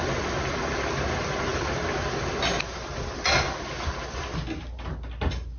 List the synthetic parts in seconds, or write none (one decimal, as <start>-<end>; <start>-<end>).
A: none